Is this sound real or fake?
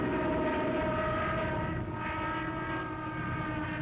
real